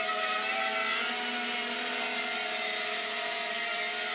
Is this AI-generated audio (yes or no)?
no